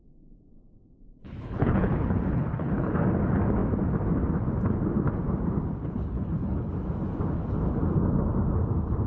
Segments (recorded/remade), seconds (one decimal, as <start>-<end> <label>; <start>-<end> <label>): 0.0-1.2 recorded; 1.2-2.9 remade; 2.9-5.8 recorded; 5.8-6.7 remade; 6.7-9.1 recorded